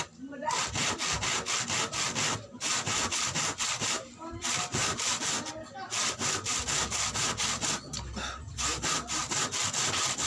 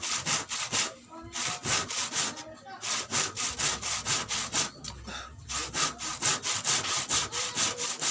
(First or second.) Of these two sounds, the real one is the second